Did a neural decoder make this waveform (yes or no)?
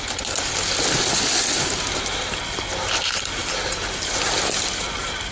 no